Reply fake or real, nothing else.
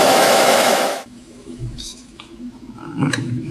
fake